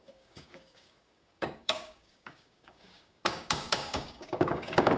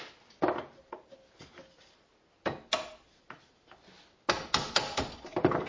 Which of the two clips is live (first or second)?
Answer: second